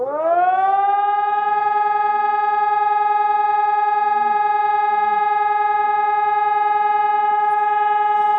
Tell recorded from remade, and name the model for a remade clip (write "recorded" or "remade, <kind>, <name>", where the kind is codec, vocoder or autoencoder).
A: recorded